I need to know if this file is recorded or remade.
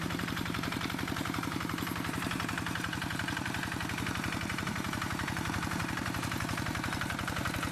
remade